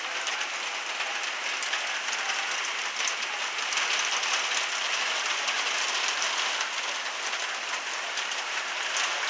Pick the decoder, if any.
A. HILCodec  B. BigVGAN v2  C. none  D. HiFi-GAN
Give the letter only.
C